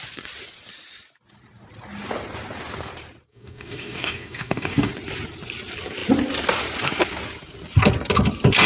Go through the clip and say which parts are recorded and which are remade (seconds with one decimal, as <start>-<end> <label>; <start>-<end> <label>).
0.0-3.3 recorded; 3.3-4.9 remade; 4.9-8.7 recorded